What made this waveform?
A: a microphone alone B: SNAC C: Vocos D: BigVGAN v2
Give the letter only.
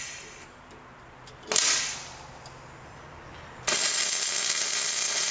A